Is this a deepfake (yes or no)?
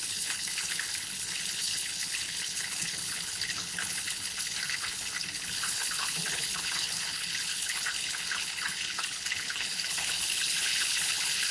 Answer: yes